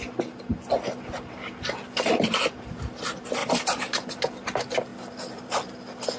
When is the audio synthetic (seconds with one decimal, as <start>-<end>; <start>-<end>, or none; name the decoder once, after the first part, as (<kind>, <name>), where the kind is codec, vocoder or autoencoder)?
none